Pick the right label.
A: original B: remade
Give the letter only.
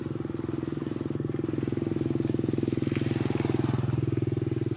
A